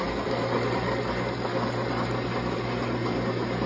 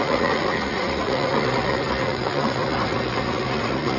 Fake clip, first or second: second